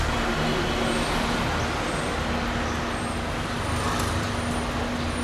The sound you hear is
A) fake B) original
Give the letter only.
B